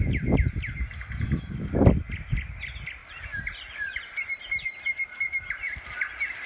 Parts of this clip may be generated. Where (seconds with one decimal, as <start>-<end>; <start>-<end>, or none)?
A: 3.0-6.5